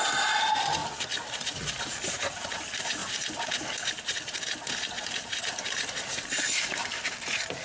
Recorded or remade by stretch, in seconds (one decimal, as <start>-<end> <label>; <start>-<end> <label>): 0.0-7.6 recorded